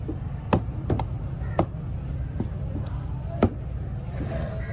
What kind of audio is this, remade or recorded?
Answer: recorded